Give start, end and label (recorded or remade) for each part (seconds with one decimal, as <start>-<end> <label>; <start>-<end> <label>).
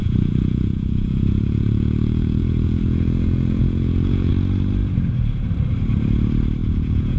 0.0-4.3 remade; 4.3-6.6 recorded; 6.6-7.2 remade